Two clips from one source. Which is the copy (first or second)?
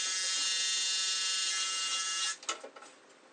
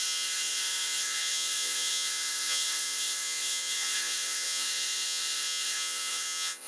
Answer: second